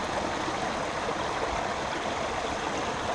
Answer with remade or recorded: recorded